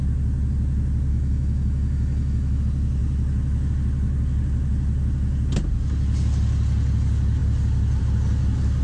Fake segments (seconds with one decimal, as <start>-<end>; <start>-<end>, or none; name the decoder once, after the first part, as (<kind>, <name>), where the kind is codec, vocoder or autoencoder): 1.1-2.6 (autoencoder, DAC-VAE)